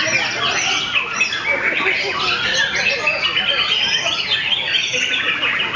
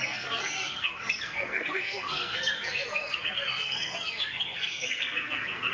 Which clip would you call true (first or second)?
first